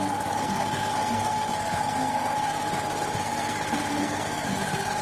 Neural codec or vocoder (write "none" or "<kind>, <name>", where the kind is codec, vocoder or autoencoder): codec, SNAC